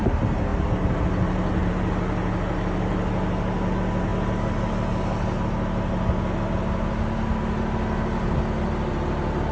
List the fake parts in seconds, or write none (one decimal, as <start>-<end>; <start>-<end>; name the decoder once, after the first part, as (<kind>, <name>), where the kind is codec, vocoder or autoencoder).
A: none